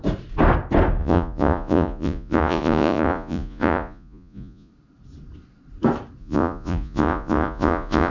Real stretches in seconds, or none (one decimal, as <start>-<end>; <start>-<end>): 0.0-1.0; 4.7-6.2